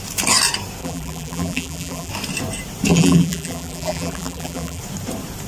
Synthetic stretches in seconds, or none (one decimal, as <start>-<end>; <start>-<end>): 0.8-2.1; 2.9-4.8